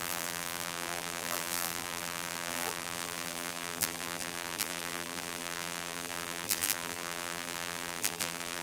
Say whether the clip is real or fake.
fake